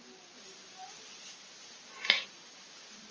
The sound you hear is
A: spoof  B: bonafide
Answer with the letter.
B